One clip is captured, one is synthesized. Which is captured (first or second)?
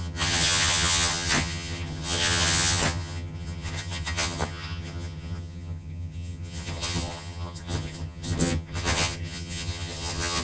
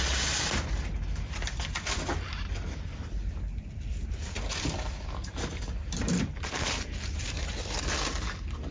second